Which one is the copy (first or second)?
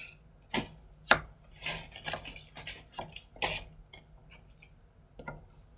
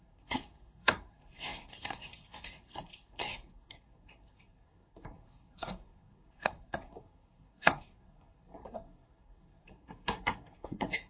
second